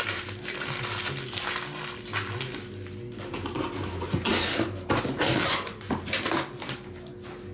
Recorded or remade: recorded